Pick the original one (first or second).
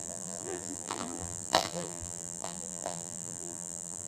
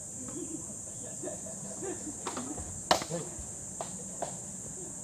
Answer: second